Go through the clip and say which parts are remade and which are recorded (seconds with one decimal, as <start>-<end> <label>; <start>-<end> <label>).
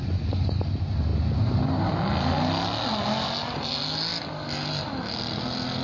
0.0-5.8 recorded